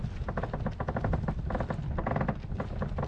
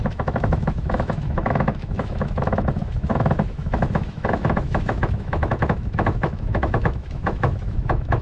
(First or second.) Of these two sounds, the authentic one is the first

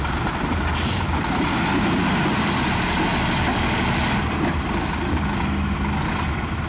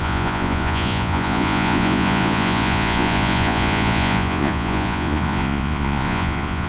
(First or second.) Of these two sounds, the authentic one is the first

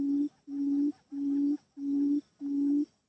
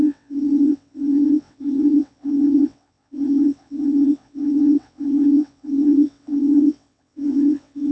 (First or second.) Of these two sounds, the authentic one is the first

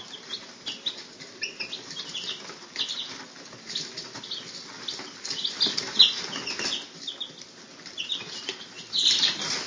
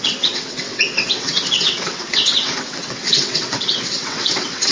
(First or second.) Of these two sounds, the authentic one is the first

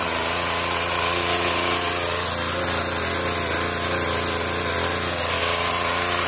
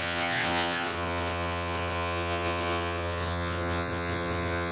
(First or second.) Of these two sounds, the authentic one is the first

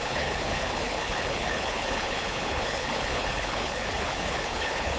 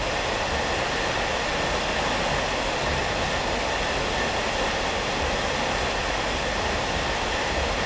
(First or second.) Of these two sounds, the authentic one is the second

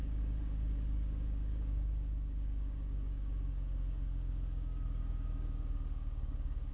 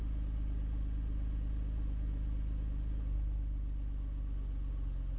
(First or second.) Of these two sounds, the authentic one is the second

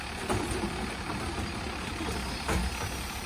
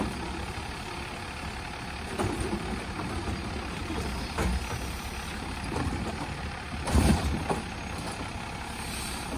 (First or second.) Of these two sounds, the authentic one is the first